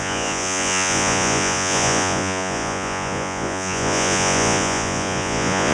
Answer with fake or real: fake